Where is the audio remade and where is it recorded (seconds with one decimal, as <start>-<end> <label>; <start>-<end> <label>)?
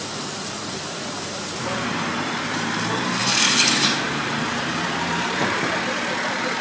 0.0-3.2 remade; 3.2-4.0 recorded; 4.0-6.6 remade